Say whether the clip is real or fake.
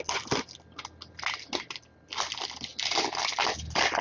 real